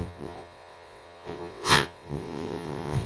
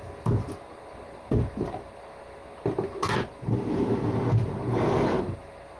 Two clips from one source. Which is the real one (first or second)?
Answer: second